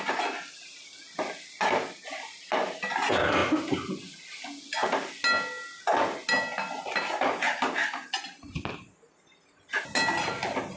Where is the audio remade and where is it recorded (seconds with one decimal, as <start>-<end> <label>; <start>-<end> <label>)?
0.0-10.8 recorded